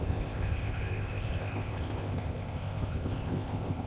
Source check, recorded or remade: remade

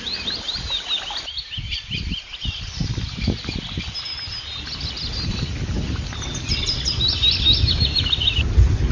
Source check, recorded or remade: recorded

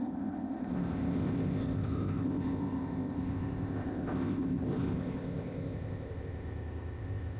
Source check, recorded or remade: remade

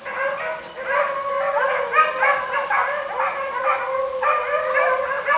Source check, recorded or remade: recorded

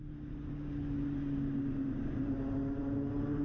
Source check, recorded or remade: recorded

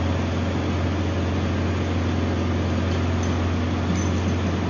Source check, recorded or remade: recorded